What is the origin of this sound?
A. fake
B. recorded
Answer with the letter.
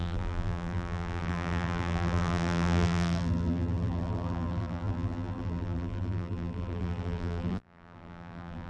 A